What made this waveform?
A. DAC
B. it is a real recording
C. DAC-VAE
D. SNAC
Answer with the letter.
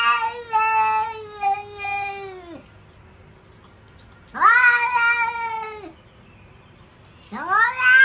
B